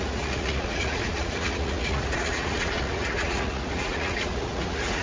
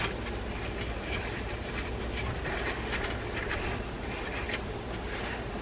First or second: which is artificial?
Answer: first